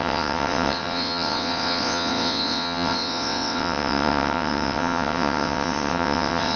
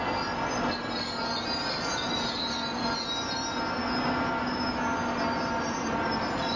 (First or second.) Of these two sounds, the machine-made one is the first